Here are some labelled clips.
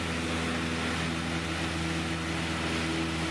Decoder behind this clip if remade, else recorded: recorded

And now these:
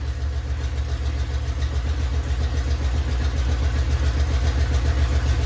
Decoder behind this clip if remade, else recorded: recorded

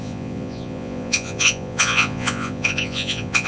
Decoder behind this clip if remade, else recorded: remade, vocoder, Vocos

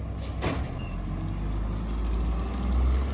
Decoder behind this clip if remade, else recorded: recorded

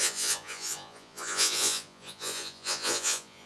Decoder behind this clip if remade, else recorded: remade, vocoder, Vocos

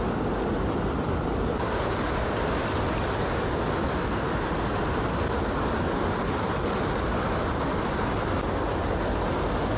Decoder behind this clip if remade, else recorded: recorded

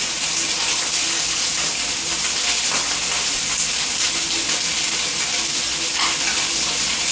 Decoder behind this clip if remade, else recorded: recorded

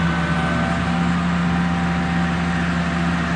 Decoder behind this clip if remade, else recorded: recorded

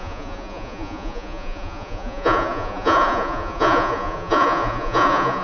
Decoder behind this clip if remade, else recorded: remade, vocoder, Vocos